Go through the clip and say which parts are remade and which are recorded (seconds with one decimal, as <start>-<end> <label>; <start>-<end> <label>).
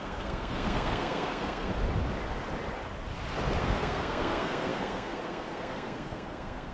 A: 0.0-1.7 remade; 1.7-3.6 recorded; 3.6-6.7 remade